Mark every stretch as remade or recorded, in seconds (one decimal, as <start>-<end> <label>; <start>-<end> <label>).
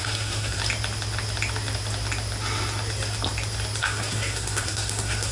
0.0-0.6 remade; 0.6-3.8 recorded; 3.8-5.3 remade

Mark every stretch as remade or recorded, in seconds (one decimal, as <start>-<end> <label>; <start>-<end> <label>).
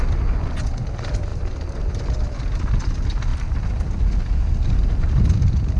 0.0-5.8 recorded